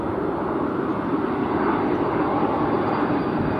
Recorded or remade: recorded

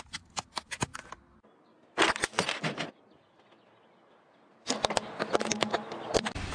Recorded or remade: recorded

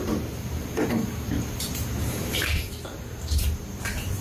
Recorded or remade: remade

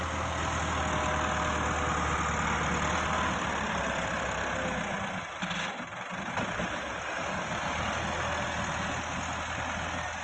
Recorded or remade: recorded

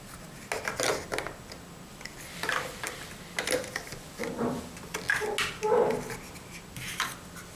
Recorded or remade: recorded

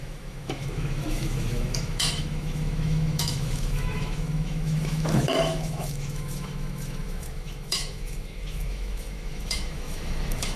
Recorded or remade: remade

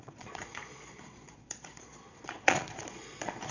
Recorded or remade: remade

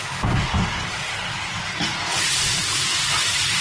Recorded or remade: recorded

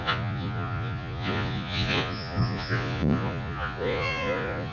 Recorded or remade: remade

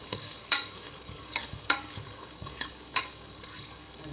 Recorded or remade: remade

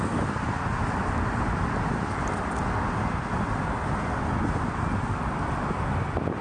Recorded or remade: recorded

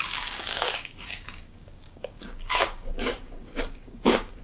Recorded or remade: remade